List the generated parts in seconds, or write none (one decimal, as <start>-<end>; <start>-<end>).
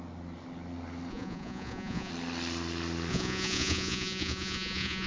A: 1.1-2.1; 3.1-5.1